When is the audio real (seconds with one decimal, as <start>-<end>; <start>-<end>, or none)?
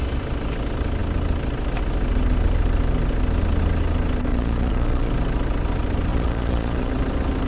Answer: 0.0-4.3; 5.1-6.1; 6.9-7.5